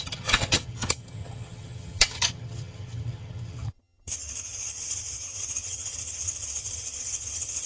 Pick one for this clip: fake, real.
fake